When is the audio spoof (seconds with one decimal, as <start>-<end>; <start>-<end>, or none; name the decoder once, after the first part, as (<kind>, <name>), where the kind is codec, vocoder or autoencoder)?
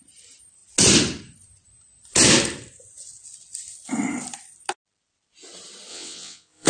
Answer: 5.9-6.7 (vocoder, WaveNeXt)